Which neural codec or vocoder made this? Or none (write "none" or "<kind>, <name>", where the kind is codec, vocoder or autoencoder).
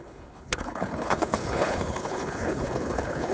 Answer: codec, HILCodec